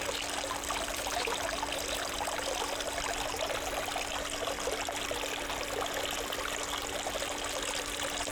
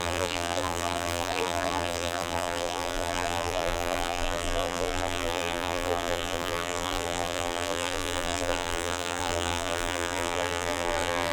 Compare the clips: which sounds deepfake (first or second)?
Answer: second